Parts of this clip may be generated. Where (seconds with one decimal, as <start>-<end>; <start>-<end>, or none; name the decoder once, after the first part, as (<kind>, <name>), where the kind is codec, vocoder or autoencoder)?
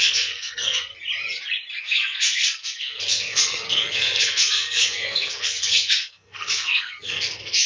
0.0-0.9 (codec, SNAC); 1.8-7.7